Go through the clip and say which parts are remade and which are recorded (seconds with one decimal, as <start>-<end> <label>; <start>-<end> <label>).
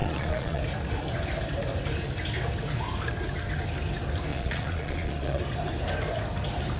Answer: 0.0-0.6 remade; 0.6-4.3 recorded; 4.3-5.4 remade; 5.4-6.8 recorded